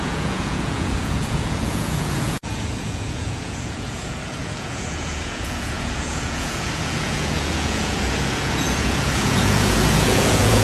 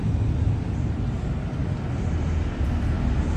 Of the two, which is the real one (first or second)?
second